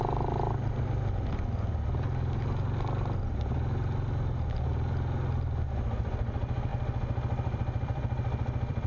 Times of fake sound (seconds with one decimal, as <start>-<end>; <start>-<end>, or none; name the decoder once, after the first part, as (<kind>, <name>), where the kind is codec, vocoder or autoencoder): 6.7-8.9 (vocoder, BigVGAN v2)